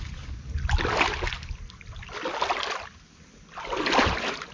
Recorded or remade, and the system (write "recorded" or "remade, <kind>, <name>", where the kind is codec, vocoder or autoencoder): recorded